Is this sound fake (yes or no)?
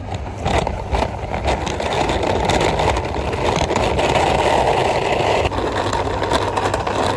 no